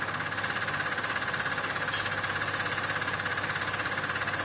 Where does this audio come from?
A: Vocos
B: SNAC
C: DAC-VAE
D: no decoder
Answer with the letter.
D